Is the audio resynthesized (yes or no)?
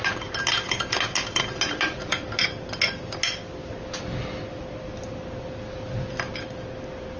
no